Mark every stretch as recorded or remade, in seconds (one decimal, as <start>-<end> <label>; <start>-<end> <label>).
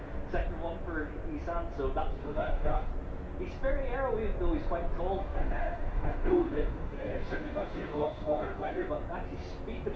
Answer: 0.0-2.2 recorded; 2.2-2.9 remade; 2.9-5.2 recorded; 5.2-8.9 remade; 8.9-10.0 recorded